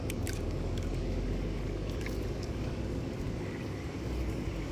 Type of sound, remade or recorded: remade